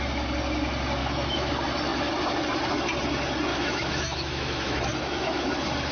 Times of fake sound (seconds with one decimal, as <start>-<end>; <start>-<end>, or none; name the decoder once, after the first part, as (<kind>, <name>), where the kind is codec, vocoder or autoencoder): 1.0-1.5 (autoencoder, DAC-VAE); 3.5-5.5